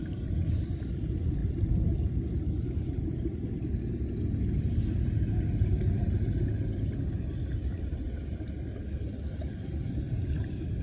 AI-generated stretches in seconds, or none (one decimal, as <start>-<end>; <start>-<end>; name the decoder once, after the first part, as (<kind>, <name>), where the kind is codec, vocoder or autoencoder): none